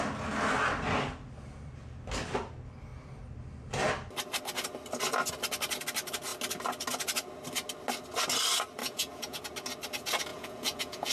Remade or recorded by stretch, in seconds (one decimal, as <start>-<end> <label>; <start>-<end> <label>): 0.0-8.8 recorded; 8.8-9.4 remade; 9.4-10.3 recorded; 10.3-11.1 remade